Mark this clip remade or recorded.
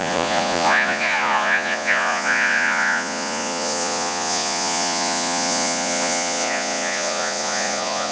remade